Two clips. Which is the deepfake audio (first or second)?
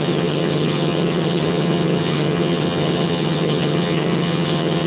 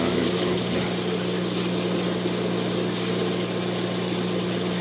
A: first